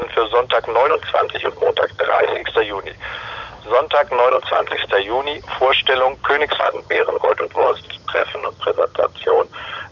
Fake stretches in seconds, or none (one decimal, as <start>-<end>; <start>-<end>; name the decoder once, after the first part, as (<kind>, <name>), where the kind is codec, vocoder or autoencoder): 0.9-2.4 (vocoder, HiFi-GAN); 4.3-4.8; 6.6-9.9